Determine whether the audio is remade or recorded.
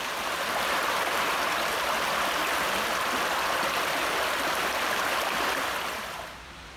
recorded